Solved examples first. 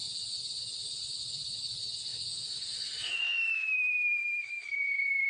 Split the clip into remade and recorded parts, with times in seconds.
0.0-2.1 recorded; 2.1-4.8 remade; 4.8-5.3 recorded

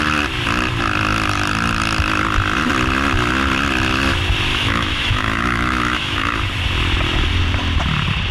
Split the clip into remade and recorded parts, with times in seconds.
0.0-4.5 recorded; 4.5-6.4 remade; 6.4-8.3 recorded

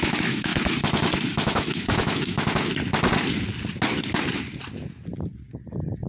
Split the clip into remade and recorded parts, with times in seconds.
0.0-0.5 remade; 0.5-1.3 recorded; 1.3-2.7 remade; 2.7-6.1 recorded

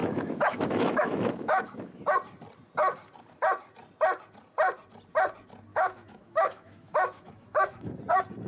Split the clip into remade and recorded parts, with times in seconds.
0.0-1.9 remade; 1.9-5.7 recorded; 5.7-7.9 remade; 7.9-8.5 recorded

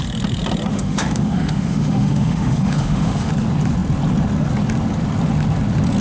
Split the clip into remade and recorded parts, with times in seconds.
0.0-0.7 recorded; 0.7-3.3 remade; 3.3-6.0 recorded

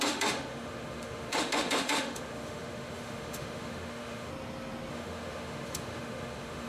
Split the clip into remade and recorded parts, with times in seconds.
0.0-4.3 remade; 4.3-4.9 recorded; 4.9-6.7 remade

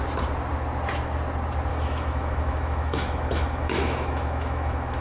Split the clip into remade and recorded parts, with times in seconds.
0.0-1.7 recorded; 1.7-5.0 remade